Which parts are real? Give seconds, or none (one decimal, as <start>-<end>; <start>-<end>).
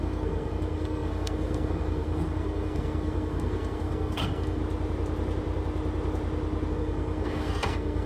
4.6-6.7